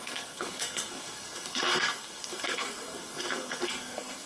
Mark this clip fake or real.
fake